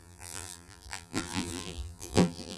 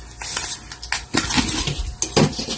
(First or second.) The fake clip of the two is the first